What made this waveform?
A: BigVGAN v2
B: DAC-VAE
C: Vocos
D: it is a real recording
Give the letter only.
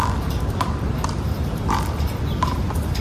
A